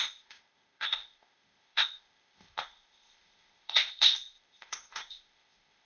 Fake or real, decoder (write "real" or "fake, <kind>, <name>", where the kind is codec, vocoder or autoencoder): fake, codec, ZipCodec